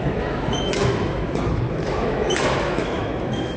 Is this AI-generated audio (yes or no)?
yes